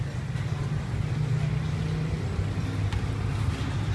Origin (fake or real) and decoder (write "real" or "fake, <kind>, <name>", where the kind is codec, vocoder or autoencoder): real